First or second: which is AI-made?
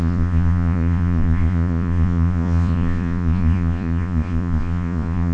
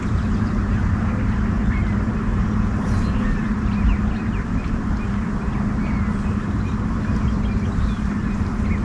first